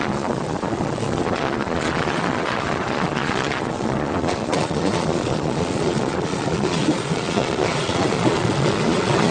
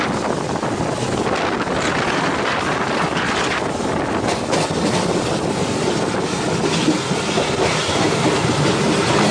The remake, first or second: first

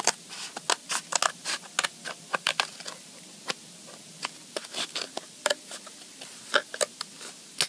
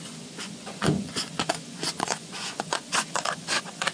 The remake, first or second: second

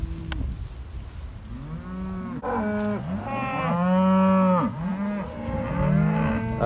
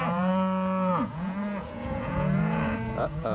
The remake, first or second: second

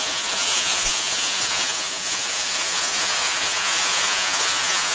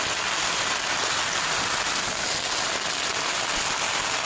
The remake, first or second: first